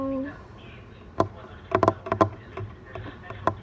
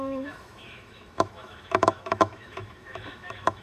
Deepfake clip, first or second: second